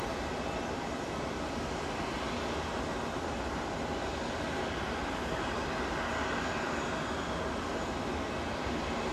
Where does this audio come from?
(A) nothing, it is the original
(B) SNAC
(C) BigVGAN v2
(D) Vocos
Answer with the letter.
A